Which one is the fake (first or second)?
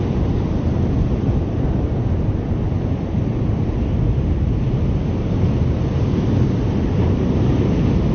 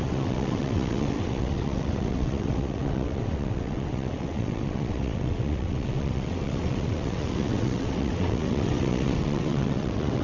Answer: second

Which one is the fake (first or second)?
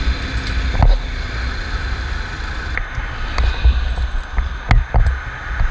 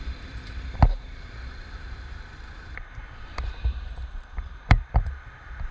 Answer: second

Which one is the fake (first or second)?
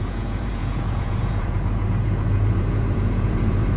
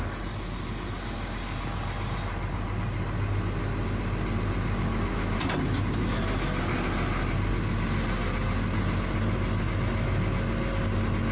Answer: first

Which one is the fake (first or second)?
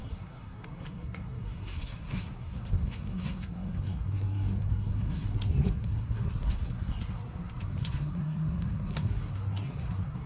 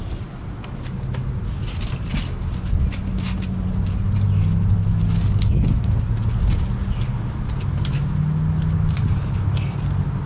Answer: first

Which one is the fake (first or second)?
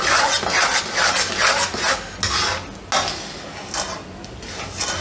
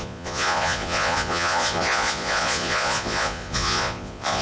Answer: second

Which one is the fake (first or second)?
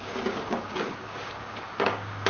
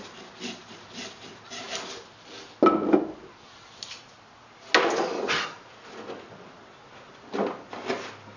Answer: first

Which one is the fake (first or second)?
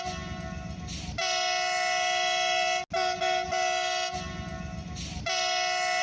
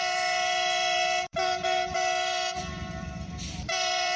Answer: second